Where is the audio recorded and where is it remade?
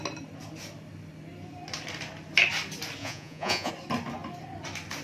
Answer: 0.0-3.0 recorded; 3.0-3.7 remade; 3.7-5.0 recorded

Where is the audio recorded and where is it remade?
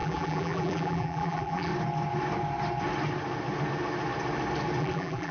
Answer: 0.0-1.7 remade; 1.7-4.8 recorded; 4.8-5.3 remade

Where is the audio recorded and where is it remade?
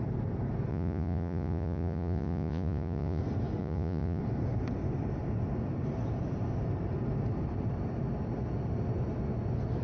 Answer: 0.0-0.7 recorded; 0.7-3.2 remade; 3.2-3.6 recorded; 3.6-4.2 remade; 4.2-9.8 recorded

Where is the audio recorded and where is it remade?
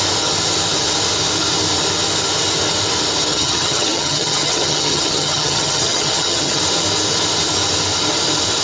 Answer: 0.0-3.3 recorded; 3.3-6.6 remade; 6.6-8.6 recorded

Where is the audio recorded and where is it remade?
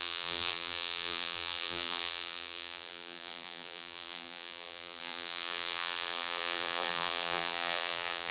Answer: 0.0-8.3 remade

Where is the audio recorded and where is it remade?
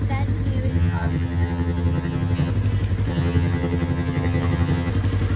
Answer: 0.0-0.7 recorded; 0.7-2.5 remade; 2.5-3.1 recorded; 3.1-4.9 remade; 4.9-5.4 recorded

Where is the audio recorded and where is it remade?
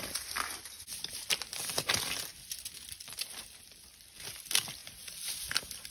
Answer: 0.0-5.9 recorded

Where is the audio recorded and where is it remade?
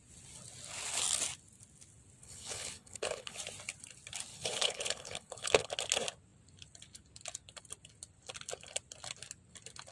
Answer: 0.0-2.2 recorded; 2.2-3.4 remade; 3.4-4.3 recorded; 4.3-5.7 remade; 5.7-9.9 recorded